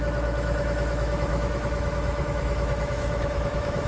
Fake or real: fake